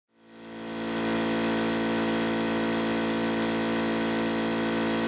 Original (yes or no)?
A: yes